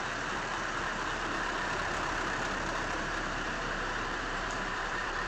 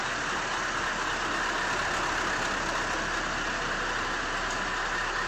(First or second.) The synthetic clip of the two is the first